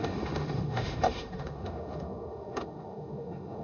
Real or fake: fake